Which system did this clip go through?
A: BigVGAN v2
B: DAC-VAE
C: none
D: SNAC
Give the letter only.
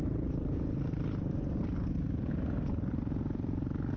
C